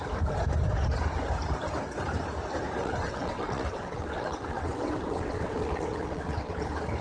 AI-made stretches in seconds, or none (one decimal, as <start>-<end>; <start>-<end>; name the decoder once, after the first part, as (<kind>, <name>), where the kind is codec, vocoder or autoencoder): 2.8-6.6 (vocoder, WaveNeXt)